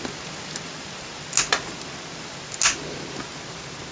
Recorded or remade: recorded